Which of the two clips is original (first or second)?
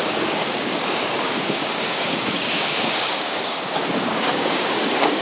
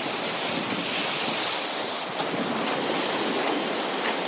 second